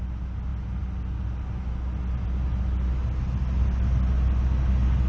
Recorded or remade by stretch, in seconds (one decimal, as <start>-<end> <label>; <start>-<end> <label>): 0.0-5.1 recorded